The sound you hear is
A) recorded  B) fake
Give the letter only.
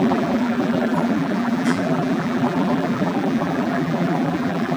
B